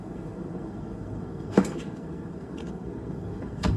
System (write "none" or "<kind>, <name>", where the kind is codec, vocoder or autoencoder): codec, SNAC